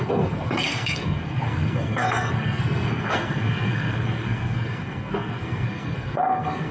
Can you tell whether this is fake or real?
fake